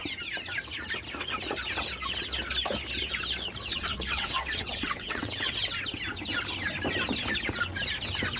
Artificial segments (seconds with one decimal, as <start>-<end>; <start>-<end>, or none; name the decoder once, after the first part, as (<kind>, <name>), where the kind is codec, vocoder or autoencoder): 3.7-5.5 (vocoder, WaveNeXt)